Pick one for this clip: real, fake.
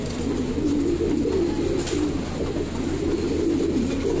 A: real